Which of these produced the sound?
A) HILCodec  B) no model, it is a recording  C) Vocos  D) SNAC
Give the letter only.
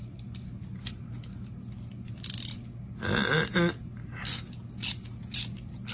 B